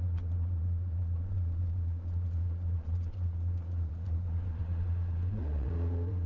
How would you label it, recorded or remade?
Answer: remade